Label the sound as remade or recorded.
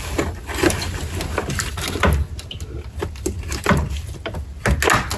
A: recorded